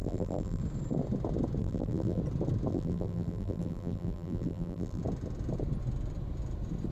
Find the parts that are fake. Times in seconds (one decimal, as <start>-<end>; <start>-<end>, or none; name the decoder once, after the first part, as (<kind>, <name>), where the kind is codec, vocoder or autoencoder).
0.0-0.6 (vocoder, BigVGAN v2); 1.6-2.2; 2.7-5.0